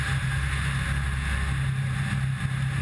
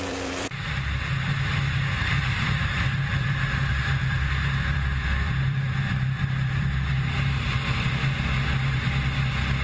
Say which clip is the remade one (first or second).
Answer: second